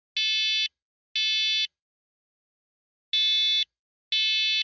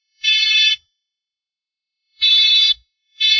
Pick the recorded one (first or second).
first